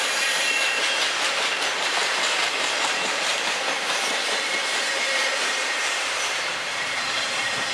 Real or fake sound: fake